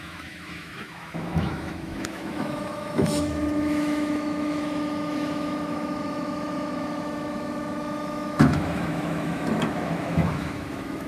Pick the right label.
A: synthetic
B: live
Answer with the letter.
A